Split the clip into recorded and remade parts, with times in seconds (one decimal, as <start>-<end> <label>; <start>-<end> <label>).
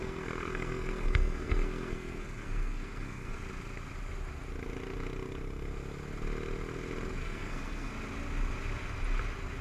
0.0-3.4 remade; 3.4-7.2 recorded; 7.2-7.9 remade; 7.9-9.6 recorded